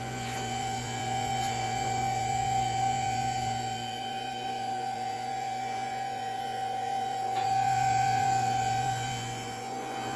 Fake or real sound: fake